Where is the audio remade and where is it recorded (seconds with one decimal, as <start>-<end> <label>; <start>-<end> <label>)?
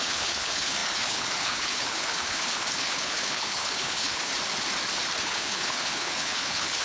0.0-4.3 remade; 4.3-5.2 recorded; 5.2-6.8 remade